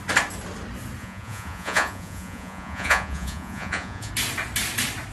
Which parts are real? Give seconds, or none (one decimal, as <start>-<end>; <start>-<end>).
0.0-1.0; 4.1-5.1